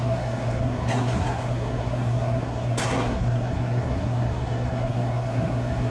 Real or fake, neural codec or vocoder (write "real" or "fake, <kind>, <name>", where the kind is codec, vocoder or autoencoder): fake, codec, SNAC